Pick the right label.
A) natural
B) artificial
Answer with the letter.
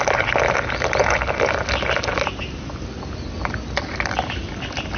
A